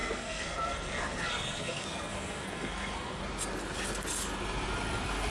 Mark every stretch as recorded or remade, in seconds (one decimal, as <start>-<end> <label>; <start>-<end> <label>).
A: 0.0-3.2 remade; 3.2-5.3 recorded

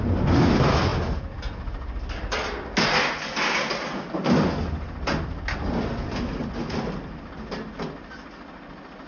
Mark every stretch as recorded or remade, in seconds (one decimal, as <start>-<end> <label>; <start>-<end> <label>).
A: 0.0-9.1 recorded

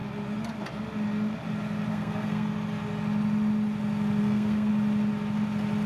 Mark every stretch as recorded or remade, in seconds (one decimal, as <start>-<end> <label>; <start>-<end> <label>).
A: 0.0-1.9 recorded; 1.9-2.5 remade; 2.5-4.2 recorded; 4.2-4.7 remade; 4.7-5.9 recorded

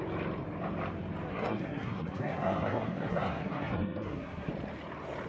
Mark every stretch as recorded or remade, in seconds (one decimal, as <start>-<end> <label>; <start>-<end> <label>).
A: 0.0-1.3 recorded; 1.3-4.5 remade; 4.5-5.3 recorded

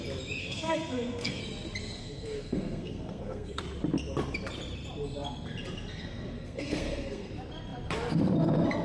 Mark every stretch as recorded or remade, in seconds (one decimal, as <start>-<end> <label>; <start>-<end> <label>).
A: 0.0-0.4 recorded; 0.4-1.4 remade; 1.4-2.0 recorded; 2.0-3.6 remade; 3.6-6.0 recorded; 6.0-7.3 remade; 7.3-8.8 recorded